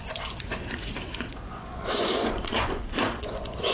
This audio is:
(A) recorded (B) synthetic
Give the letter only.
B